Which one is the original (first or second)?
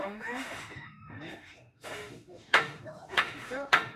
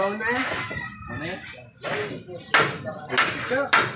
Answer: second